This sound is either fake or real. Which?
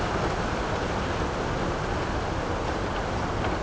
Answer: real